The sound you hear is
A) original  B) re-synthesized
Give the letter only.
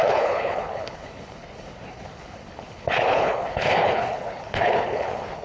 B